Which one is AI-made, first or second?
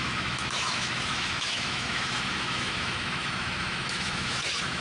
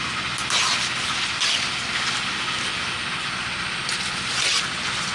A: first